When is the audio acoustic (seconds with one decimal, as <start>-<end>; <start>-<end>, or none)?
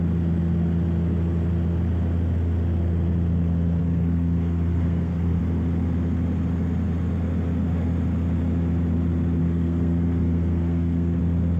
0.0-3.8; 5.4-9.4; 11.2-11.6